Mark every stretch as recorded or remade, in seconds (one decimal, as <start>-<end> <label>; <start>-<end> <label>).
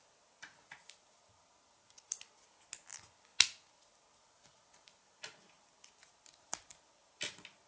0.0-7.7 recorded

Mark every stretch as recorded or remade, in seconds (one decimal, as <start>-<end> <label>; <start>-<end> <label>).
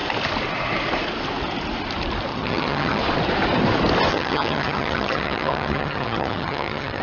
0.0-2.3 recorded; 2.3-3.0 remade; 3.0-4.1 recorded; 4.1-7.0 remade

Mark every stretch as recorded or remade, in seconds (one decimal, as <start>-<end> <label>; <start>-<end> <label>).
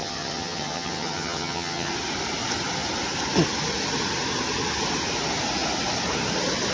0.0-1.9 remade; 1.9-6.7 recorded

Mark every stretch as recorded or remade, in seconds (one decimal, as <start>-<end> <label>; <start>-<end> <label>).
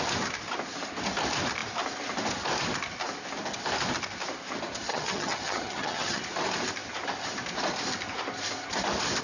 0.0-4.9 recorded; 4.9-6.2 remade; 6.2-9.2 recorded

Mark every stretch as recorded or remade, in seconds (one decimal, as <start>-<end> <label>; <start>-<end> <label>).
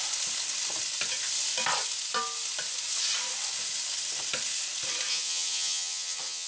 0.0-5.1 recorded; 5.1-6.5 remade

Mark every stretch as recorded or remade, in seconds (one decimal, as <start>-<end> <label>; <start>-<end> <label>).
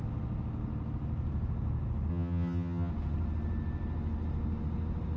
0.0-2.1 recorded; 2.1-2.9 remade; 2.9-5.2 recorded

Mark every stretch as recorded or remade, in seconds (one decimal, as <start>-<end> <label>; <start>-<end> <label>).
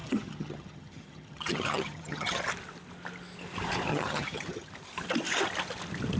0.0-2.4 remade; 2.4-3.9 recorded; 3.9-4.7 remade; 4.7-6.2 recorded